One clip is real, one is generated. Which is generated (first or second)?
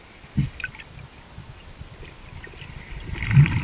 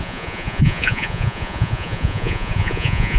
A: second